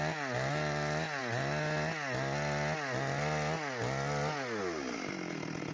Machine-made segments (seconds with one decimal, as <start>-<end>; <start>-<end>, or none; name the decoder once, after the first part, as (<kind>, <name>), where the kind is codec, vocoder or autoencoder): none